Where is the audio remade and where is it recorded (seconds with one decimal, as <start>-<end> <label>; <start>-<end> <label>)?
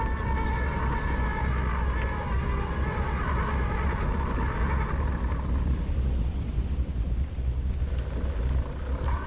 0.0-9.3 recorded